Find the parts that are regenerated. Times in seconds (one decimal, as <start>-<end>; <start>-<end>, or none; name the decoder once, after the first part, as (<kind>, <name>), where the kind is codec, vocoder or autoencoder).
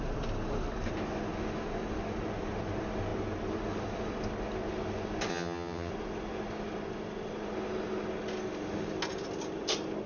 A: 5.3-5.9 (vocoder, HiFi-GAN)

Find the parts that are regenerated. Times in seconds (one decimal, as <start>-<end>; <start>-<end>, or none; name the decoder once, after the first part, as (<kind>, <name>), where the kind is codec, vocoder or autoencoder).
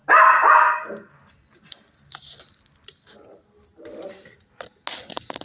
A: none